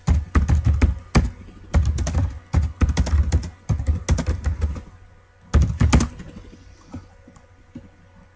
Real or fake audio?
real